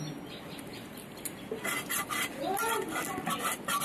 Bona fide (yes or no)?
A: yes